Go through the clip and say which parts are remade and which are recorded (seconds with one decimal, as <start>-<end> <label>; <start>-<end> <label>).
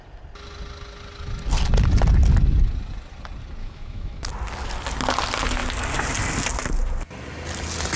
0.0-3.6 recorded; 3.6-4.2 remade; 4.2-8.0 recorded